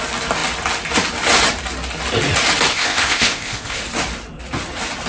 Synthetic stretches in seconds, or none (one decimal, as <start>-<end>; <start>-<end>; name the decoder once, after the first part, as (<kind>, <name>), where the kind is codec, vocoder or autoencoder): 2.7-3.8 (codec, ZipCodec)